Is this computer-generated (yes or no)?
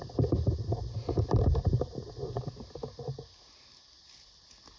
no